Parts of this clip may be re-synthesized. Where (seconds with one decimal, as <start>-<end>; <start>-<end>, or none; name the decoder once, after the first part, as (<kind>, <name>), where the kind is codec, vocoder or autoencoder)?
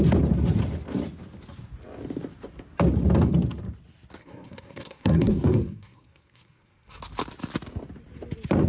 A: 4.2-7.0 (codec, SNAC)